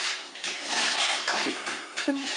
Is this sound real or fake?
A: fake